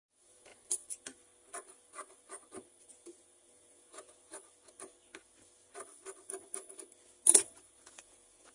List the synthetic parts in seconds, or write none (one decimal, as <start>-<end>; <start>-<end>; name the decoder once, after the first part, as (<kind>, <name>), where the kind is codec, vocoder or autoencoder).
0.0-0.5 (vocoder, Vocos); 2.8-4.3; 7.6-8.5